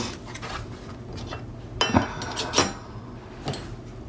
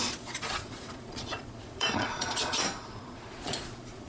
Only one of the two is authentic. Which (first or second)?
first